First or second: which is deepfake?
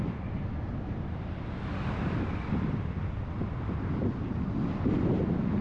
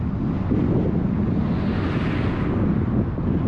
first